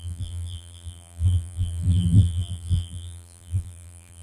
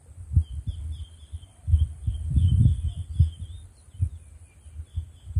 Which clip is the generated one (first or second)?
first